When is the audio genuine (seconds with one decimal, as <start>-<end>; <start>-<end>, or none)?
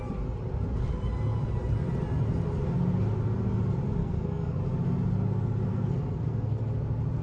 0.0-4.0; 4.6-5.7; 6.6-7.2